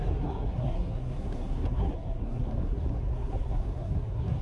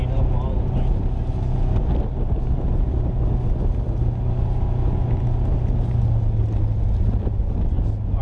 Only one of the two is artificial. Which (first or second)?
first